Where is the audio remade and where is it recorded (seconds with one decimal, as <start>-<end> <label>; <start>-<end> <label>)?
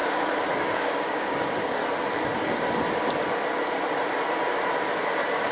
0.0-0.6 recorded; 0.6-1.8 remade; 1.8-5.1 recorded; 5.1-5.5 remade